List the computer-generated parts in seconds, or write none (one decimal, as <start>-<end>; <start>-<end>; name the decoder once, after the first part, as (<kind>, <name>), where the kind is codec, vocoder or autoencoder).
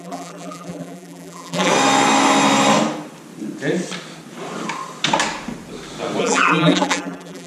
0.0-1.7 (vocoder, BigVGAN v2); 6.2-7.5